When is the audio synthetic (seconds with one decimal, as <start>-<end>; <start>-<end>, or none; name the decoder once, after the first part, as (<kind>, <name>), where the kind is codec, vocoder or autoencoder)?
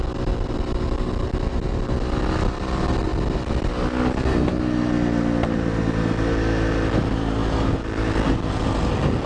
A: none